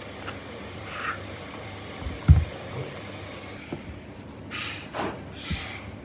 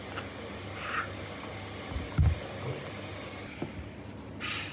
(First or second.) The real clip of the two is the second